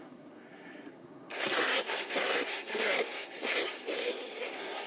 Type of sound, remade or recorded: remade